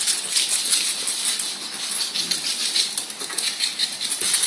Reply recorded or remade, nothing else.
recorded